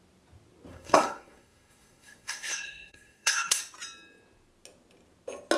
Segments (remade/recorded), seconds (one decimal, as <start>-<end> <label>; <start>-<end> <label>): 0.0-0.7 recorded; 0.7-3.6 remade; 3.6-5.6 recorded